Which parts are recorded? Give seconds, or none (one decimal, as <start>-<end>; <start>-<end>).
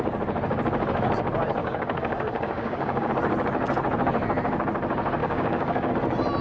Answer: 0.0-1.6; 3.1-5.2; 5.9-6.4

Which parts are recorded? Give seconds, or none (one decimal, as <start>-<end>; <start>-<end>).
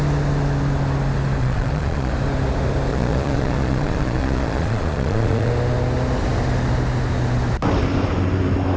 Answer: 0.0-1.4; 2.1-2.9; 5.5-8.8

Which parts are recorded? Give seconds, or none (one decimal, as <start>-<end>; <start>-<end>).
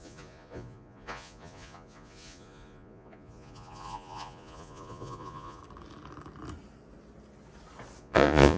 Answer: 5.6-8.0